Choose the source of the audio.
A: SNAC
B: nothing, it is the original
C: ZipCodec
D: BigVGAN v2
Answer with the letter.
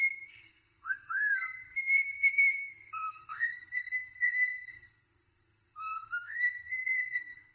A